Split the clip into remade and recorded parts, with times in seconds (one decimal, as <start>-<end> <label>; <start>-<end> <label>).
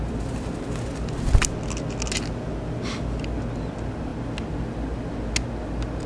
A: 0.0-6.1 recorded